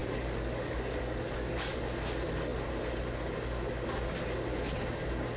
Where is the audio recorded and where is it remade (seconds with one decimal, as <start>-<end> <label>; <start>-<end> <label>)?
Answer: 0.0-1.8 remade; 1.8-5.4 recorded